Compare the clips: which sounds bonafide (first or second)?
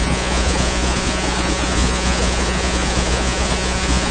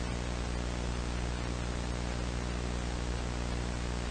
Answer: second